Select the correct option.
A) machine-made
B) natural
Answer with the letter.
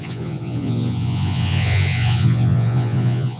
A